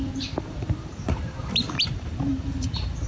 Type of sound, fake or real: fake